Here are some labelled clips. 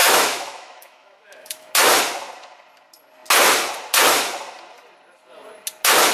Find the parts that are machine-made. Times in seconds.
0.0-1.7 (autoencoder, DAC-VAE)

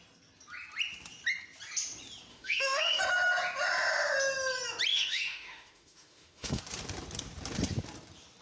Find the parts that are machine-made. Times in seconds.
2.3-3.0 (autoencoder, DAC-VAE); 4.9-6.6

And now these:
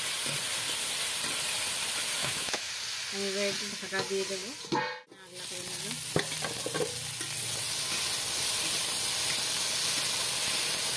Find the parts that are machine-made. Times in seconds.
2.2-2.7 (autoencoder, DAC-VAE)

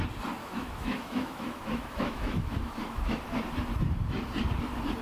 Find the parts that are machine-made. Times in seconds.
0.4-3.4 (autoencoder, DAC-VAE)